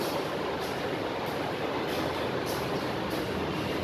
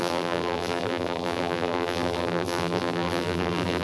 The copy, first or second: second